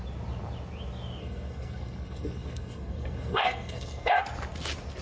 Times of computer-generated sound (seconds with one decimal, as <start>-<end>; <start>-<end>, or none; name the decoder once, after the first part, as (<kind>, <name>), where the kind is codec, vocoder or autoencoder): 1.2-4.2 (codec, SNAC)